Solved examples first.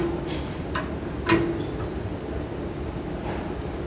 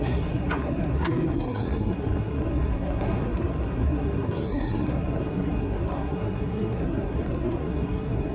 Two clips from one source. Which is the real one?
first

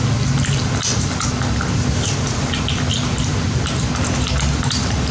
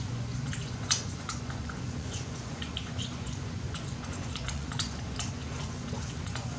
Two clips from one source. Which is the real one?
first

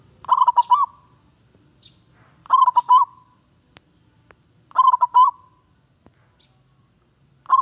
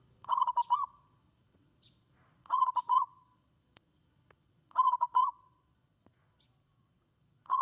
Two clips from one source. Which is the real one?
first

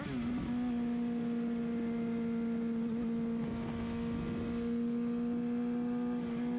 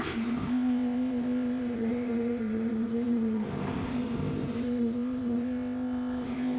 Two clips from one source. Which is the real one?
first